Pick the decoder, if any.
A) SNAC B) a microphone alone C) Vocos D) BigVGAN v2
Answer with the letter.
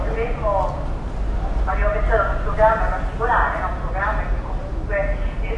B